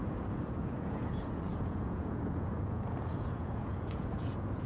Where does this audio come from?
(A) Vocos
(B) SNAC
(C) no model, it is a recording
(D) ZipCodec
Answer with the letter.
A